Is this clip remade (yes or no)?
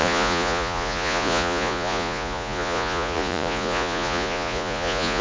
yes